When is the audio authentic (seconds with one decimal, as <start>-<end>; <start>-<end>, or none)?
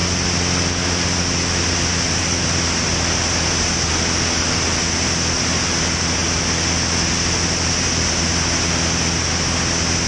0.0-10.1